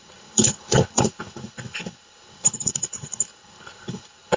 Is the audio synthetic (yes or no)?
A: yes